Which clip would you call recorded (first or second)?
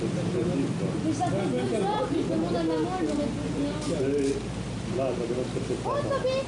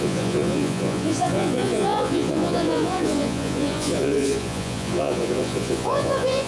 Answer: first